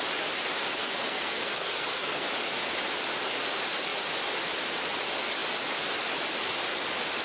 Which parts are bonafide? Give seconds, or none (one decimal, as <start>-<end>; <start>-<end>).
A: 0.0-0.8; 2.3-7.2